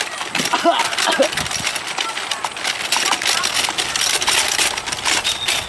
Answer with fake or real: real